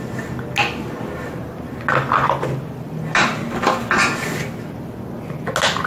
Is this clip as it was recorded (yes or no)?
yes